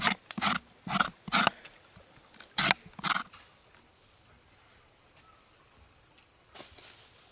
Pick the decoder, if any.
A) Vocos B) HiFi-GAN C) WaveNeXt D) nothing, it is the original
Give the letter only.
D